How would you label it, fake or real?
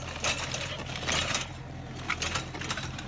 real